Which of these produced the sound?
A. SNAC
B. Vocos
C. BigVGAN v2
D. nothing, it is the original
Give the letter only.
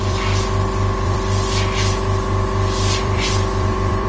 C